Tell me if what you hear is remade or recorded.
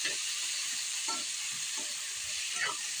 remade